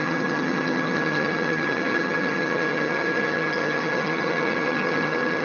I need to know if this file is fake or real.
fake